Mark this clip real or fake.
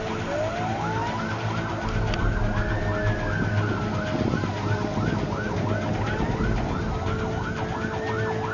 real